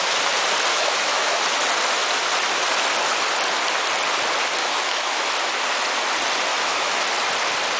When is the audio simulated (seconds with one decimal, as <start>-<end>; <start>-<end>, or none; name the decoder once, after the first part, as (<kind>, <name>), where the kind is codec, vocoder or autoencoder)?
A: 0.7-1.4 (autoencoder, DAC-VAE); 4.6-5.3; 6.5-7.0